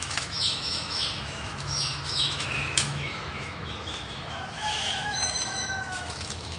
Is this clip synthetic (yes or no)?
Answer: yes